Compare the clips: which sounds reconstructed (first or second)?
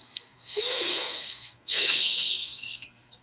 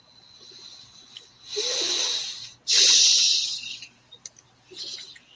first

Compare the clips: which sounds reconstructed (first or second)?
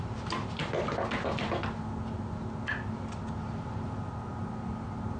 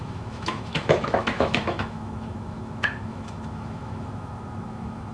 second